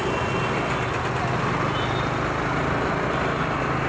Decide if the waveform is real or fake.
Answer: real